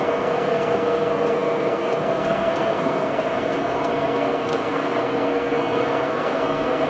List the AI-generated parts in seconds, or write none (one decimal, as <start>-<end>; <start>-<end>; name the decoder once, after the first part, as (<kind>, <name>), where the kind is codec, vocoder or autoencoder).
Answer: 0.0-6.9 (codec, SNAC)